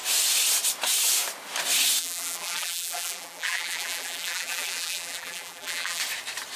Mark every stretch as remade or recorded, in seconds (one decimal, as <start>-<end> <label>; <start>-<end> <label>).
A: 0.0-2.0 recorded; 2.0-6.0 remade; 6.0-6.6 recorded